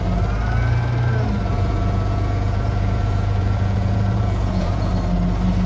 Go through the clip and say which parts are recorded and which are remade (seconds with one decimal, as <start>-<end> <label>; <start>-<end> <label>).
0.0-1.5 recorded; 1.5-4.9 remade; 4.9-5.7 recorded